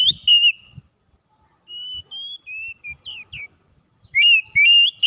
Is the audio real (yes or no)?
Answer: yes